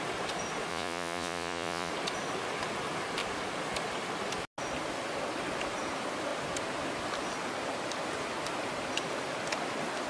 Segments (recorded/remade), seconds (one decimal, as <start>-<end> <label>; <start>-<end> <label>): 0.0-0.7 recorded; 0.7-1.9 remade; 1.9-10.1 recorded